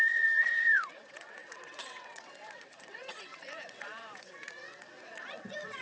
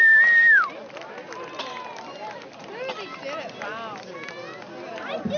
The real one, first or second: second